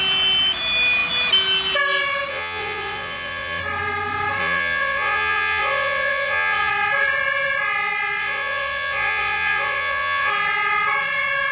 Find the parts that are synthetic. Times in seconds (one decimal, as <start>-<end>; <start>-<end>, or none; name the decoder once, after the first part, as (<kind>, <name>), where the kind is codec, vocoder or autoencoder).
2.3-3.6 (vocoder, Vocos); 4.4-6.7; 8.2-10.3